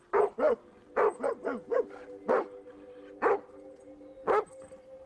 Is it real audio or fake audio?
real